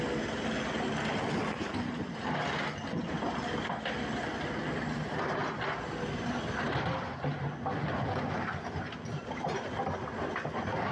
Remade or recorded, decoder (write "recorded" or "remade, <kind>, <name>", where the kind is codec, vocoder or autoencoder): recorded